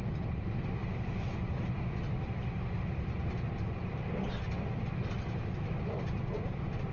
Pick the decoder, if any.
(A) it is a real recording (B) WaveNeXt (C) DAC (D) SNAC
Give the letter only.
A